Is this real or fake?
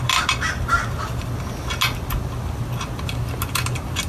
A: real